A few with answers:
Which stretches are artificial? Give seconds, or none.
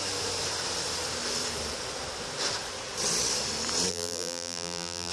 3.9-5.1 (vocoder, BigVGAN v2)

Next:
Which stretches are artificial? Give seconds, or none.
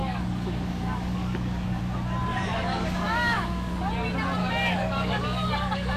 0.0-1.8 (codec, DAC); 2.3-3.7; 4.4-6.0